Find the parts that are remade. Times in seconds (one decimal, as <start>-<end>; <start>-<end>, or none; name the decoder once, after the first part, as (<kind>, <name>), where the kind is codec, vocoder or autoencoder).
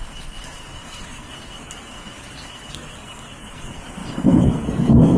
0.0-5.2 (codec, SNAC)